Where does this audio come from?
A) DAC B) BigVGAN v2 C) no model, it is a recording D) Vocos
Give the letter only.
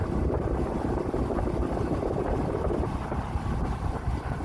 C